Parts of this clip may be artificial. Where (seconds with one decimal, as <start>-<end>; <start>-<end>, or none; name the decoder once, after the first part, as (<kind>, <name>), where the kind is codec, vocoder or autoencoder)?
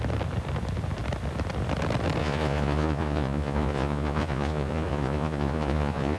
2.2-6.2 (vocoder, Vocos)